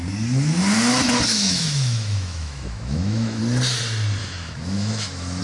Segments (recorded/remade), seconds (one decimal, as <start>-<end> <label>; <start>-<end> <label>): 0.0-1.3 recorded; 1.3-3.4 remade; 3.4-4.2 recorded; 4.2-5.4 remade